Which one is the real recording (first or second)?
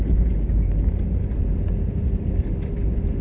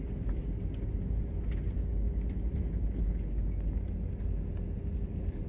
second